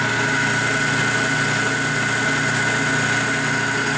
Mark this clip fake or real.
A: real